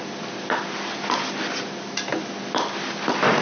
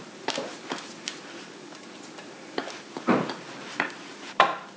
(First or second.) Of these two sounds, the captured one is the first